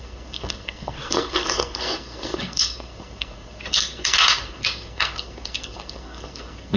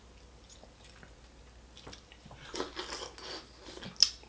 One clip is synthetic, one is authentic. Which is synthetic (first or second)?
first